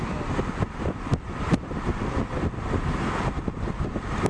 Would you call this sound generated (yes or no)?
no